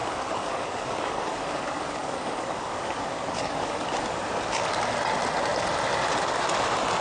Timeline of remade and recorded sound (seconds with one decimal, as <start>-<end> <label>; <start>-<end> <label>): 0.0-4.2 remade; 4.2-7.0 recorded